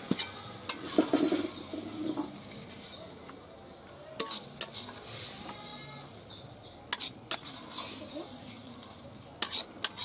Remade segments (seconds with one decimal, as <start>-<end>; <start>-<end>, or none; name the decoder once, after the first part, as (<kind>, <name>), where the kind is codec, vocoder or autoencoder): none